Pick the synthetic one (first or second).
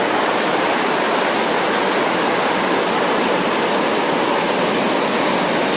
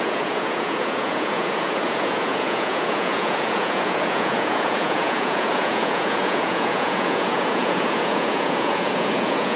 second